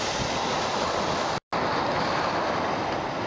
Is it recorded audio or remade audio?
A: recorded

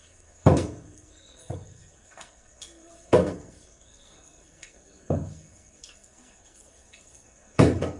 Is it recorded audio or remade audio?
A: remade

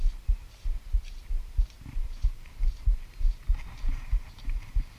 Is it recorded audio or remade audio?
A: remade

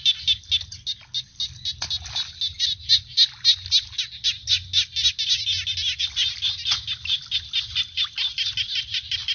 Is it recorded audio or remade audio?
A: recorded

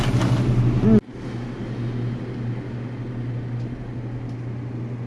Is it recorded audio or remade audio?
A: recorded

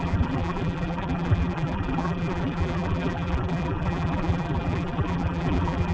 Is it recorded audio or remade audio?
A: remade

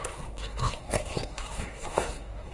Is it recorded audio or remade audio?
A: remade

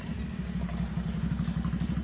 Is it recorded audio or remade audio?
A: recorded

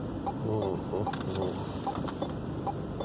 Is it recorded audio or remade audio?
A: recorded